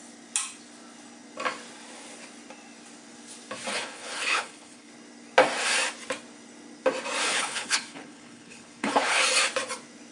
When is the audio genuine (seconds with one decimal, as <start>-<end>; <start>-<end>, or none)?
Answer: 0.0-3.7; 4.9-7.2; 9.2-10.1